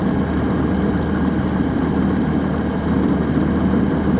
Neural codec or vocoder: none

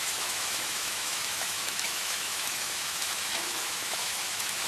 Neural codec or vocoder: autoencoder, DAC-VAE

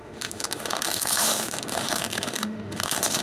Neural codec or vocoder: autoencoder, DAC-VAE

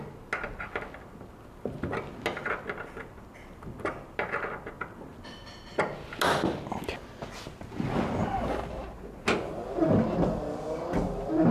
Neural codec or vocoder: none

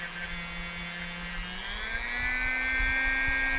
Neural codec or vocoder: none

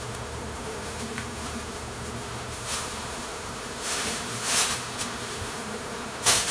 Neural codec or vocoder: autoencoder, DAC-VAE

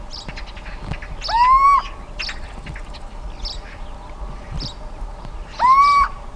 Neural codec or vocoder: none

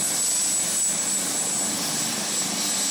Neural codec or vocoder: none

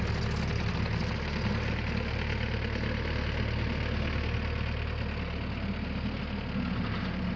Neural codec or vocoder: none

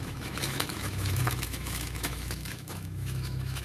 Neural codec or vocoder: autoencoder, DAC-VAE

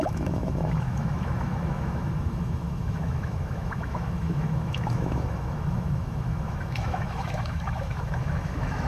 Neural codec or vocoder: autoencoder, DAC-VAE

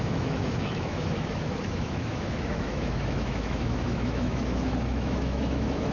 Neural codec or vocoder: autoencoder, DAC-VAE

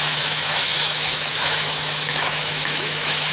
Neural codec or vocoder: autoencoder, DAC-VAE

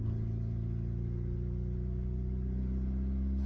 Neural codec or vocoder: none